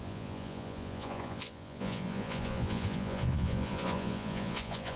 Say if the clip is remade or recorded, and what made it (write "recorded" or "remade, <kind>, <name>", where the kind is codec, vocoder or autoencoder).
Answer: remade, vocoder, Vocos